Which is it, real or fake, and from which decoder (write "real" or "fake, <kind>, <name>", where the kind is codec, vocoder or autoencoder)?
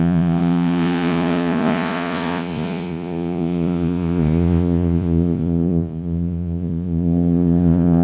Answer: fake, vocoder, Vocos